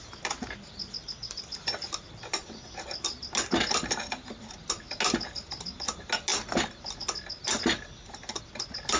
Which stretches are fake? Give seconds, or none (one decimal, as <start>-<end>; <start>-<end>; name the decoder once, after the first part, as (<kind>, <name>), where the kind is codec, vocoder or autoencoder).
none